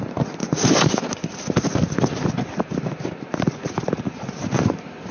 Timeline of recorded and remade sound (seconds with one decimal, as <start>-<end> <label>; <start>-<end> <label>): 0.0-5.1 recorded